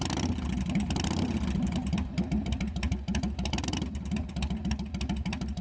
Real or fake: real